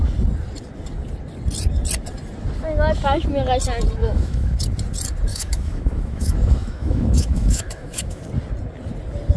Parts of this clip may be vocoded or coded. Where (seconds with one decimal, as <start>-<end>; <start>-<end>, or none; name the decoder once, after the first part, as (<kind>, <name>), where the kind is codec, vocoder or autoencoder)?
4.0-4.6 (autoencoder, DAC-VAE); 5.3-8.2